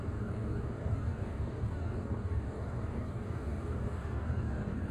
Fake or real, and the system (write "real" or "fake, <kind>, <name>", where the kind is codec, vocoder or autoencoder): fake, codec, DAC